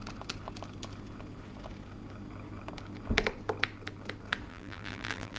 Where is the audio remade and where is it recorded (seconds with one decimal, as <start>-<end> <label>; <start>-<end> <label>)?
0.0-4.5 recorded; 4.5-5.4 remade